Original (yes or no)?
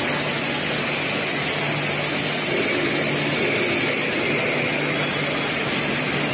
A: yes